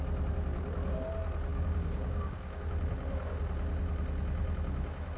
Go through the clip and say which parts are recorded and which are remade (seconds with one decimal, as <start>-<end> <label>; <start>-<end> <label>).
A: 0.0-1.5 recorded; 1.5-2.6 remade; 2.6-5.2 recorded